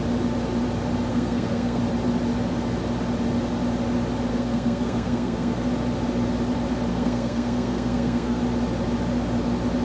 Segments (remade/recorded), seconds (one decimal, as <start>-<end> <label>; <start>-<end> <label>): 0.0-1.1 recorded; 1.1-1.8 remade; 1.8-4.3 recorded; 4.3-5.7 remade; 5.7-6.9 recorded; 6.9-8.4 remade; 8.4-9.8 recorded